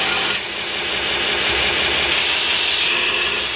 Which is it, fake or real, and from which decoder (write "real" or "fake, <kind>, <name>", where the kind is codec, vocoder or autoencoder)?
real